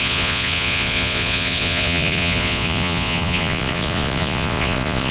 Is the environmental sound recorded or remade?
remade